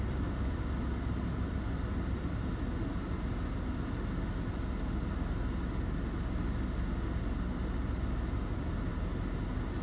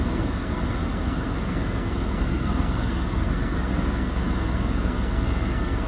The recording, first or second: first